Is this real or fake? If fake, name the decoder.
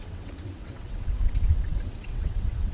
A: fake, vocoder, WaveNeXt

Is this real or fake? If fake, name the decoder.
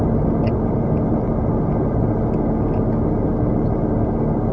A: real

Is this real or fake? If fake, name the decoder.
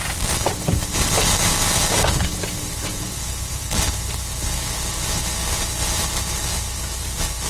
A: fake, vocoder, BigVGAN v2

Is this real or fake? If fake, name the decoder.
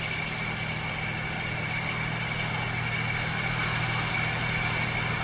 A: real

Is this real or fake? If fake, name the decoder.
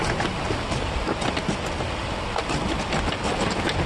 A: real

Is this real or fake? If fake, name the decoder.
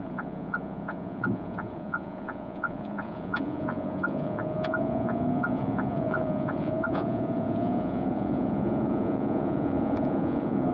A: fake, vocoder, Vocos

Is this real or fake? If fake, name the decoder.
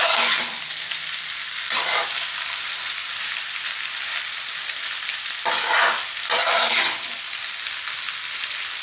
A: fake, vocoder, BigVGAN v2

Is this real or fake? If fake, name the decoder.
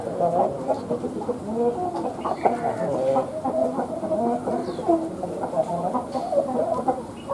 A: real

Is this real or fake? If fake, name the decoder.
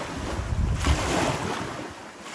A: real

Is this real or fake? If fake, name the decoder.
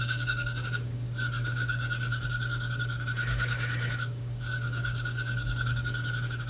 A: fake, codec, DAC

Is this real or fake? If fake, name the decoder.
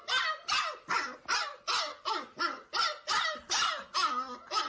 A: real